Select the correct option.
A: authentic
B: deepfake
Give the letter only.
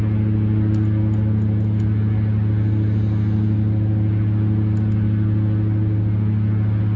A